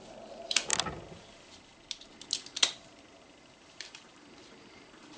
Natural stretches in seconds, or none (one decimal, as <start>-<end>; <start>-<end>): 0.7-3.2